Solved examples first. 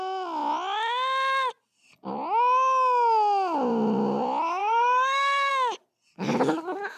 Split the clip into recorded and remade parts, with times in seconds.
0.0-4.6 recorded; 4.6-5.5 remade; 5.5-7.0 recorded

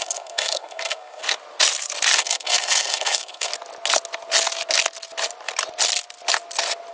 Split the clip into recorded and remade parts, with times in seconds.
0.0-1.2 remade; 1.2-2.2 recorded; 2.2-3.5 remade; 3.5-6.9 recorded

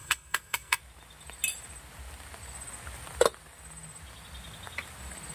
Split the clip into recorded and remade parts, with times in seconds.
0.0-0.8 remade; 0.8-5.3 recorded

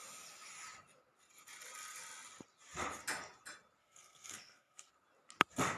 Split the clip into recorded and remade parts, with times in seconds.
0.0-3.8 recorded; 3.8-4.9 remade; 4.9-5.8 recorded

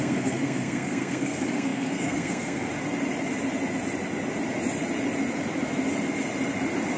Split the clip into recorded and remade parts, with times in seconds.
0.0-2.7 remade; 2.7-7.0 recorded

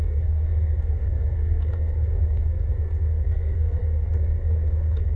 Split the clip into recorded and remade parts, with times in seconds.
0.0-5.2 remade